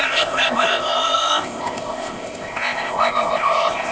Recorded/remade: remade